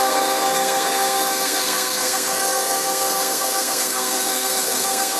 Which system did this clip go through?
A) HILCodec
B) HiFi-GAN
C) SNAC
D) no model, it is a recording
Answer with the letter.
C